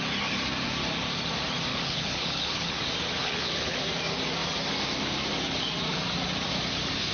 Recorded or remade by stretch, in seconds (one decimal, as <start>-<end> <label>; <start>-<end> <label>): 0.0-1.7 recorded; 1.7-2.8 remade; 2.8-3.2 recorded; 3.2-3.8 remade; 3.8-7.1 recorded